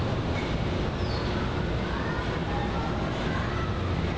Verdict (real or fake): real